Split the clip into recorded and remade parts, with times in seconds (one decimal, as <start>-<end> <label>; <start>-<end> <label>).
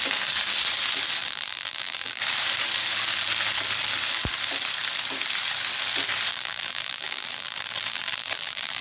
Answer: 0.0-1.2 recorded; 1.2-2.2 remade; 2.2-6.3 recorded; 6.3-8.8 remade